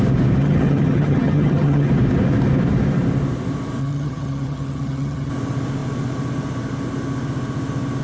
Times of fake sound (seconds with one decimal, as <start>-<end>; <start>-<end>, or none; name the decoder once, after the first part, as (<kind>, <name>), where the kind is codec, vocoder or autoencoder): 0.4-1.9 (vocoder, HiFi-GAN); 3.8-5.3